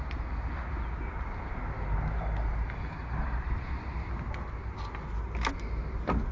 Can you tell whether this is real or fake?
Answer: real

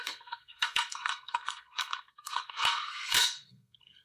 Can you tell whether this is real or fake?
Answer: fake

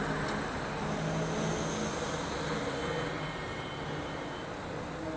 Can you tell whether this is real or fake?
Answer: real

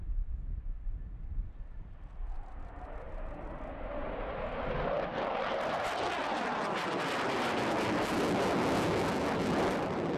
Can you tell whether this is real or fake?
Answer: real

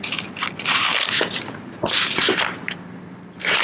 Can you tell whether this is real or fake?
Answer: real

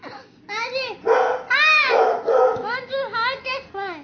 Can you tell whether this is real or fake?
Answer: real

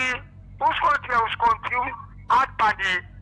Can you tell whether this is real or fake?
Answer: real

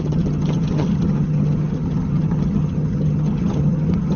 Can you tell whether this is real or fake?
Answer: fake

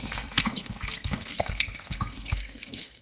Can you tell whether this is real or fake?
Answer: fake